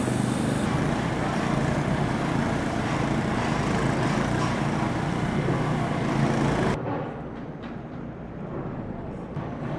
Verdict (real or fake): real